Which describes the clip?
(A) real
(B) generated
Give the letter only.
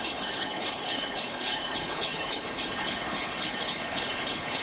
B